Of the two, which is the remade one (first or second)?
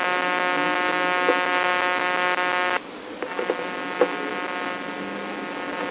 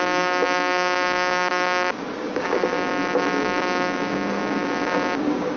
second